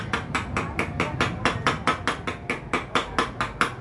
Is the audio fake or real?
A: real